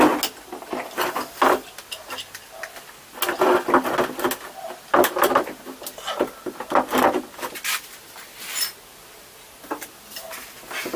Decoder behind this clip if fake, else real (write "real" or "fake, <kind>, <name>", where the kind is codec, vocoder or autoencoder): real